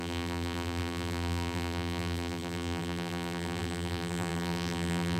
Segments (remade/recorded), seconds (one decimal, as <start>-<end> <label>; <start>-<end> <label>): 0.0-5.2 remade